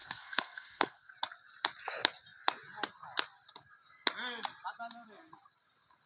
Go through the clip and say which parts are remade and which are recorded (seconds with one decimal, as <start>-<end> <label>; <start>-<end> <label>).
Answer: 0.0-1.1 remade; 1.1-6.1 recorded

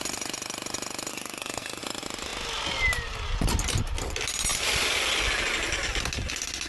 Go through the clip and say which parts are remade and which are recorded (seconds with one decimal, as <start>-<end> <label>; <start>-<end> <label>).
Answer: 0.0-1.1 recorded; 1.1-1.8 remade; 1.8-6.7 recorded

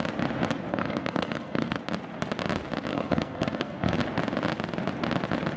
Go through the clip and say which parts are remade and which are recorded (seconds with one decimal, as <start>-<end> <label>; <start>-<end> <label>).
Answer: 0.0-0.7 recorded; 0.7-1.8 remade; 1.8-2.9 recorded; 2.9-4.0 remade; 4.0-5.6 recorded

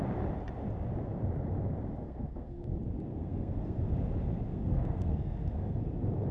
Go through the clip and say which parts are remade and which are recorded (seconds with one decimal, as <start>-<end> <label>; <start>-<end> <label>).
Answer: 0.0-2.0 recorded; 2.0-2.7 remade; 2.7-3.1 recorded; 3.1-3.9 remade; 3.9-4.5 recorded; 4.5-5.8 remade; 5.8-6.3 recorded

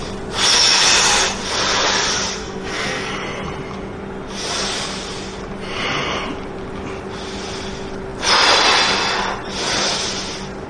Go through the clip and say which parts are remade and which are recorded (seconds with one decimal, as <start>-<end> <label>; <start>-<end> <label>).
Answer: 0.0-2.4 recorded; 2.4-3.1 remade; 3.1-10.7 recorded